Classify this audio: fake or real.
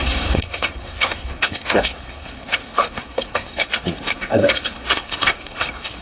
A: fake